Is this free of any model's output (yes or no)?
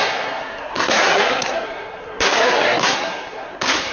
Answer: no